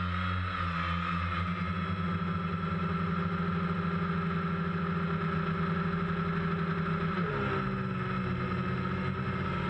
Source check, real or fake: real